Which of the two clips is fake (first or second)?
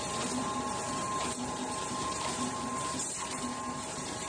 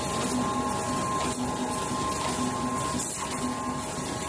first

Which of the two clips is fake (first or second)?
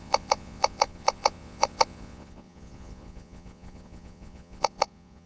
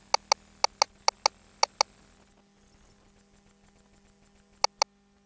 first